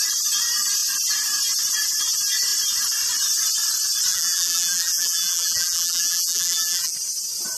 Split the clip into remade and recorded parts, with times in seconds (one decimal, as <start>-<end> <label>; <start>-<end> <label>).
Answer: 0.0-4.1 recorded; 4.1-6.9 remade; 6.9-7.6 recorded